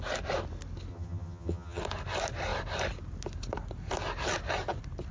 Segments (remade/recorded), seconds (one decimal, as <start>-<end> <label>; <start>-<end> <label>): 0.0-0.9 recorded; 0.9-1.8 remade; 1.8-5.1 recorded